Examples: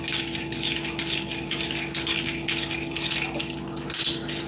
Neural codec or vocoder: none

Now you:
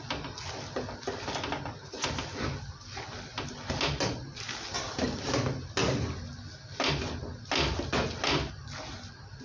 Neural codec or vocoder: none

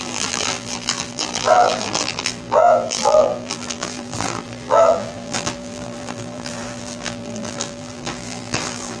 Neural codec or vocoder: vocoder, BigVGAN v2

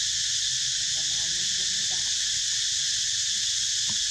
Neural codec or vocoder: none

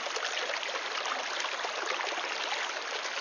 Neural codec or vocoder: none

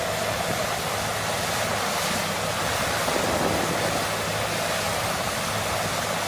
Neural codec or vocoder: none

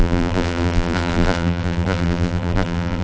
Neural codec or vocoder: vocoder, BigVGAN v2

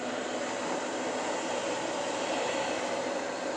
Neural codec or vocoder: vocoder, BigVGAN v2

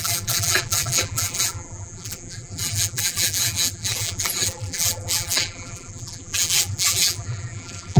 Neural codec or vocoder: vocoder, BigVGAN v2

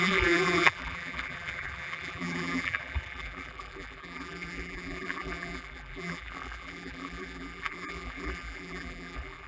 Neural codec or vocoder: vocoder, BigVGAN v2